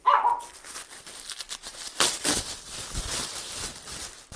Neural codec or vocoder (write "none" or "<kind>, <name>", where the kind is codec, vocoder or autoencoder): none